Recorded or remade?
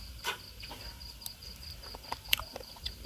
remade